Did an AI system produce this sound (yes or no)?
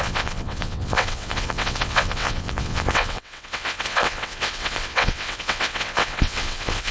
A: yes